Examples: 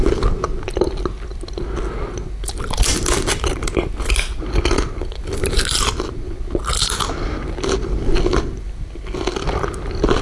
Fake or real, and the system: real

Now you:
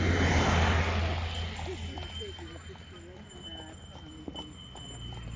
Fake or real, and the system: real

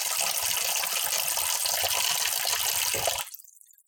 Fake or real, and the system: real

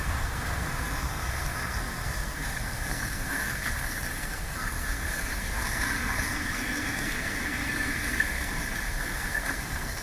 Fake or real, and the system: fake, codec, SNAC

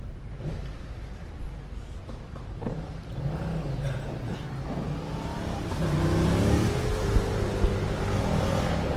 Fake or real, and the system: real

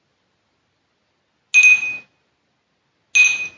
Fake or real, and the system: real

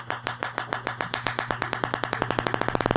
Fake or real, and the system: real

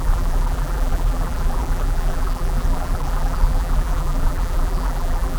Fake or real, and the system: fake, vocoder, BigVGAN v2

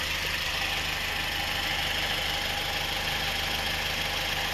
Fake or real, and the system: real